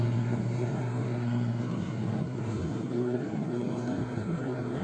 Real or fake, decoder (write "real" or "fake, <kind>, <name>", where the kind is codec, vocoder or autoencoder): fake, codec, SNAC